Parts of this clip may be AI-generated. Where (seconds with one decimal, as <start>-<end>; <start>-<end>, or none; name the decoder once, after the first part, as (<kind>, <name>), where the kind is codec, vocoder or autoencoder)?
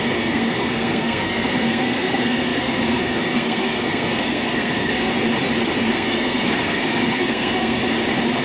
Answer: 0.0-5.1 (codec, SNAC); 5.9-7.8